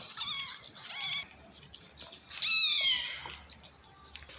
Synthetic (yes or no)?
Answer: no